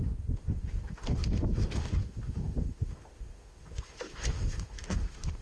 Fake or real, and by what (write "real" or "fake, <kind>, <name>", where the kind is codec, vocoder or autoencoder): fake, autoencoder, DAC-VAE